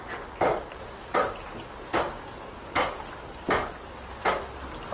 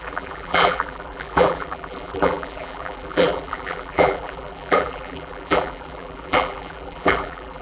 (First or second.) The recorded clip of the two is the first